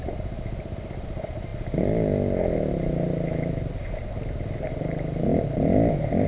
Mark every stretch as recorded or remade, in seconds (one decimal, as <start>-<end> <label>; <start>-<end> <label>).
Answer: 0.0-6.3 recorded